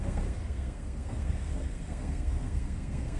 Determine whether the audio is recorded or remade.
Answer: remade